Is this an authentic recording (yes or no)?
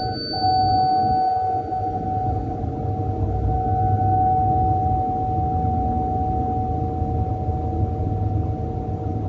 yes